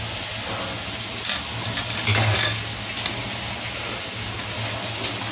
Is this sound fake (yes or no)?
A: no